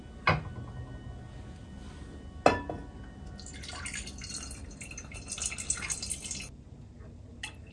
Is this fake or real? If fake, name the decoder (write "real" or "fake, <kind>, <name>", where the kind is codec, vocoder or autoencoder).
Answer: real